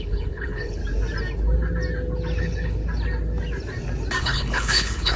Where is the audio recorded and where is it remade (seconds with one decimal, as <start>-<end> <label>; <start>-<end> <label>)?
0.0-0.8 remade; 0.8-2.4 recorded; 2.4-2.8 remade; 2.8-4.2 recorded; 4.2-5.2 remade